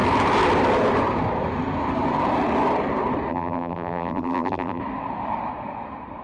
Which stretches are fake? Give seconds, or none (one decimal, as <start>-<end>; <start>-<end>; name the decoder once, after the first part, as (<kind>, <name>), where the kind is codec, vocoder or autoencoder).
3.3-4.8 (vocoder, BigVGAN v2)